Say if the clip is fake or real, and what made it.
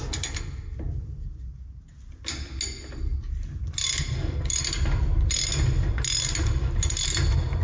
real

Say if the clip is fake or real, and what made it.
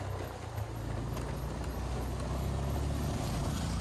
real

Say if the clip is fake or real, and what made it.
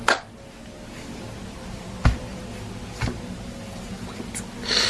real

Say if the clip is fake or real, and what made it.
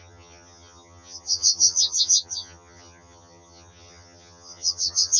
fake, vocoder, HiFi-GAN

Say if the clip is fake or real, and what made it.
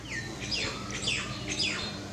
real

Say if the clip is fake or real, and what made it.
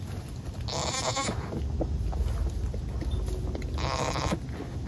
real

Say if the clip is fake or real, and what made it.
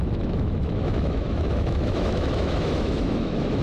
fake, autoencoder, DAC-VAE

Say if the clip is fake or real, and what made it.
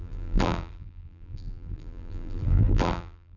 fake, vocoder, BigVGAN v2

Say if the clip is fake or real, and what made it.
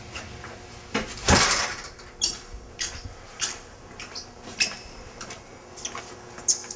real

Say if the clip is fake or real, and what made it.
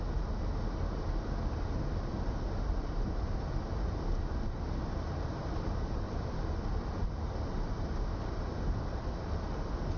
real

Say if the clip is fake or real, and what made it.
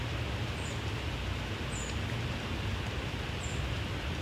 real